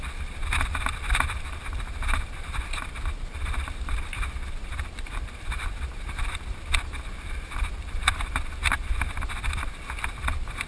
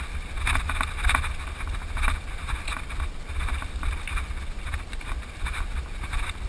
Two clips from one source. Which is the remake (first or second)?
first